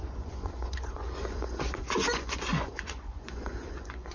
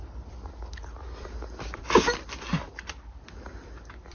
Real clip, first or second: second